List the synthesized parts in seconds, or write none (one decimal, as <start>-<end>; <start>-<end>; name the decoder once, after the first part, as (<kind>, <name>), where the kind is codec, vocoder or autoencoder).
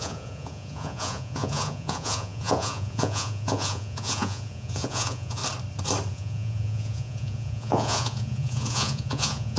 0.0-5.4 (vocoder, Vocos); 6.1-9.6